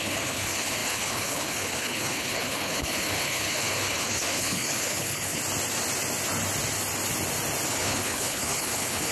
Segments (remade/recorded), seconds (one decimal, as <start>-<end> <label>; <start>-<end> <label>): 0.0-5.4 remade; 5.4-7.7 recorded; 7.7-9.1 remade